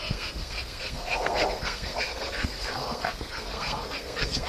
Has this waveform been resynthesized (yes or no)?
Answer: yes